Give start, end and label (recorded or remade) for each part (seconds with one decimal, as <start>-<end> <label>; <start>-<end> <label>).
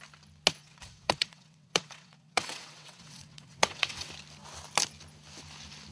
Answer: 0.0-0.6 recorded; 0.6-4.1 remade; 4.1-5.9 recorded